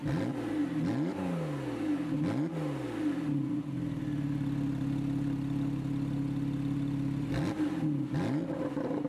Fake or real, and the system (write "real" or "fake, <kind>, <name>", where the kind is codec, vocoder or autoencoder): real